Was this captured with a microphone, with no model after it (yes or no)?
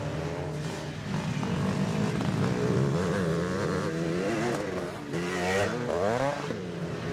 yes